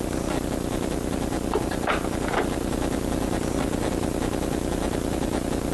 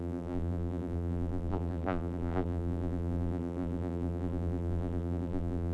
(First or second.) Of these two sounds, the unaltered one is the first